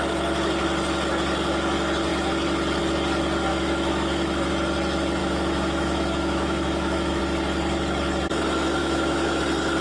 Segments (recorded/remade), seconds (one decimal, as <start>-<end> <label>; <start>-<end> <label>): 0.0-3.5 recorded; 3.5-4.5 remade; 4.5-5.2 recorded; 5.2-7.2 remade; 7.2-8.8 recorded; 8.8-9.4 remade; 9.4-9.8 recorded